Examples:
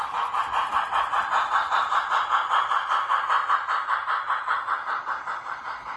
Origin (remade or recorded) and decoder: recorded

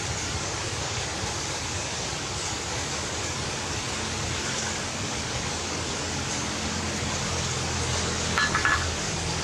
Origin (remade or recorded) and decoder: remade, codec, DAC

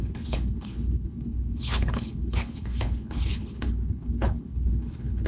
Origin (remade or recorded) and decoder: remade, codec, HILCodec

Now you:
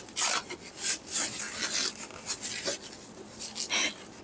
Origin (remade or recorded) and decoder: recorded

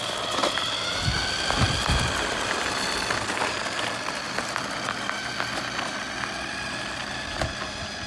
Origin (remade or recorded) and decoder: recorded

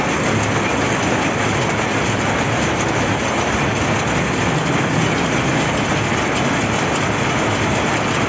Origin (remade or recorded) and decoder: recorded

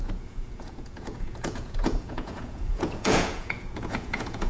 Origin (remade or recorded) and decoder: remade, vocoder, Vocos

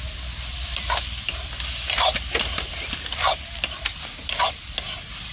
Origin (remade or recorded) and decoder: recorded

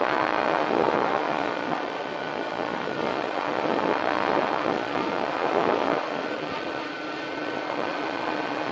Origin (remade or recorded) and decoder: remade, vocoder, Vocos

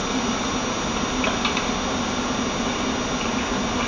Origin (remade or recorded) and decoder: recorded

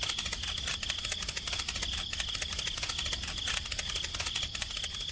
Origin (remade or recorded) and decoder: recorded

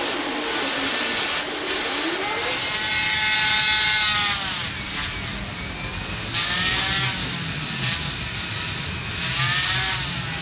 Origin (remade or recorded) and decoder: recorded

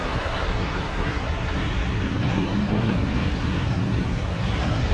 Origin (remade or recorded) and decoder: remade, codec, SNAC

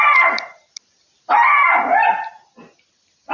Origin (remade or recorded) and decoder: recorded